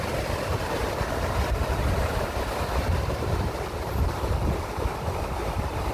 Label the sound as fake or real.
fake